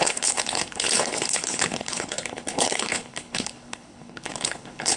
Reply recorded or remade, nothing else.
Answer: remade